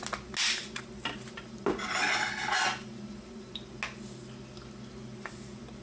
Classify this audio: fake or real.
real